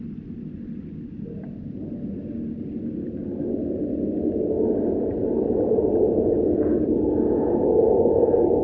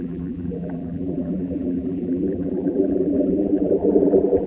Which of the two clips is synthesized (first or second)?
second